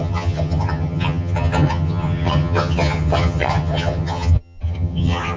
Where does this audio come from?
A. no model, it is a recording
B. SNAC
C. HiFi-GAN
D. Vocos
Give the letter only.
C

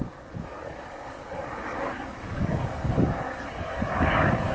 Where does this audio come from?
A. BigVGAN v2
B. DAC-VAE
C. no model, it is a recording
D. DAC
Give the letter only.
D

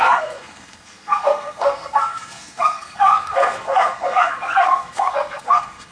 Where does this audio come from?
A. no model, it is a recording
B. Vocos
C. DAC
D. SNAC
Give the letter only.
D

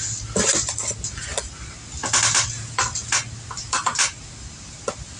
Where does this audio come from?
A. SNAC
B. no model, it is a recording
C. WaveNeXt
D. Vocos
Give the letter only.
B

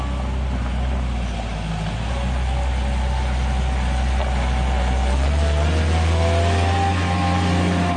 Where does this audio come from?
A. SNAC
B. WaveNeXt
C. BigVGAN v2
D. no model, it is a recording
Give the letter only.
D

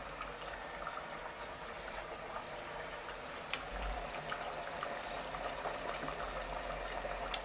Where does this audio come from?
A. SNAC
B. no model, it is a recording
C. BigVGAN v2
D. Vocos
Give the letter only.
B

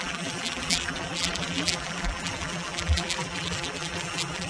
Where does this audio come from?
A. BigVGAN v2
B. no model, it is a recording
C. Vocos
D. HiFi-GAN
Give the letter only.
A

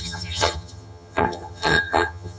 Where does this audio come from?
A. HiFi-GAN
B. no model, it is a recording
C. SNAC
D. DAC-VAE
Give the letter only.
A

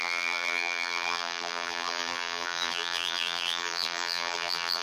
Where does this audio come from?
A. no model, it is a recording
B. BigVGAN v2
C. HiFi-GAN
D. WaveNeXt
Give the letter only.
B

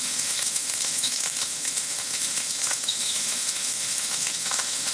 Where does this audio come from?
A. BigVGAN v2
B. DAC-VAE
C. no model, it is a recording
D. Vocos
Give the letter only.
B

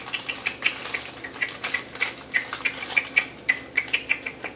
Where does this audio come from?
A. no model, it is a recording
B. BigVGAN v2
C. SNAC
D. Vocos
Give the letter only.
A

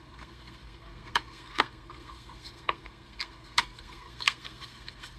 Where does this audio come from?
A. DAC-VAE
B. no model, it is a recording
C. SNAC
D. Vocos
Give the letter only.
C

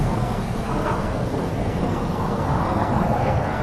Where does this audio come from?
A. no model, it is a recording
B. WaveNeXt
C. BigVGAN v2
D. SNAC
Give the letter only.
D